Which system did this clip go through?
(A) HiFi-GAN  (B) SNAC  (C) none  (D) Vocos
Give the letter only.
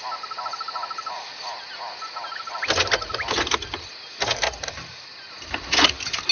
C